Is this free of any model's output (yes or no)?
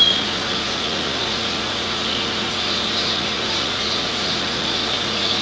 no